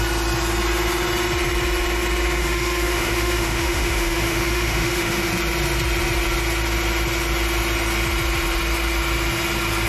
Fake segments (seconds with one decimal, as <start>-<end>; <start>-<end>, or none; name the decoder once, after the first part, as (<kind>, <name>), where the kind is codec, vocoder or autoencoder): 2.4-5.3 (autoencoder, DAC-VAE)